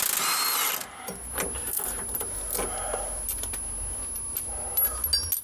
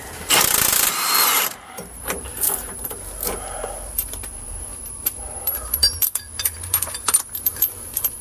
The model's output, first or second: second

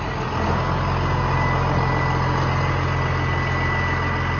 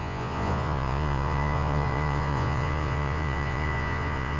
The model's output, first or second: second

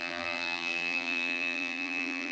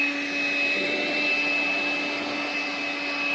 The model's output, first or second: first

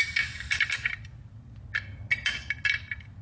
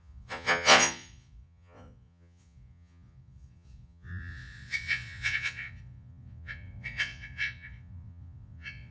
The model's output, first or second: second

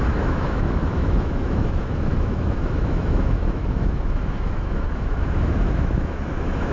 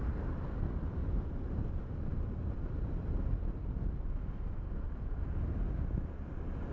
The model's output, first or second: first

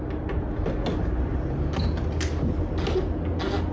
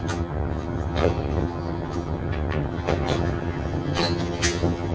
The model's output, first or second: second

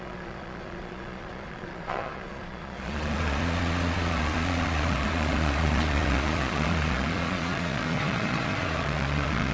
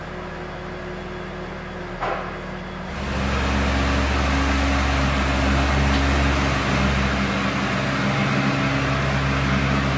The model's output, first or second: first